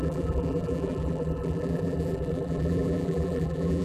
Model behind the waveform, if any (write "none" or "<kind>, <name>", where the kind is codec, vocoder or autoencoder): vocoder, BigVGAN v2